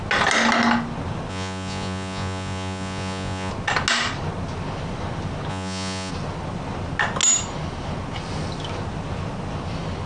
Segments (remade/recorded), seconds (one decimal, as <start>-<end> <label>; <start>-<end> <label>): 0.0-1.3 recorded; 1.3-3.5 remade; 3.5-5.5 recorded; 5.5-6.1 remade; 6.1-10.1 recorded